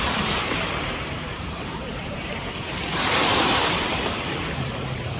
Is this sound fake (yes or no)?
yes